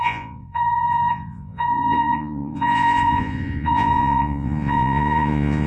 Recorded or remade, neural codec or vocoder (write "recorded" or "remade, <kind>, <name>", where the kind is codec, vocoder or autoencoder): remade, vocoder, Vocos